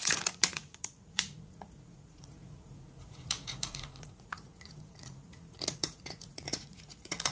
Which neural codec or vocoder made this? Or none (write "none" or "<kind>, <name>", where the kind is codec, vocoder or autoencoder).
vocoder, Vocos